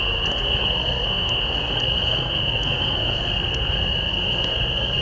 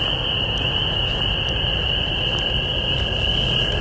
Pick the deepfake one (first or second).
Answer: first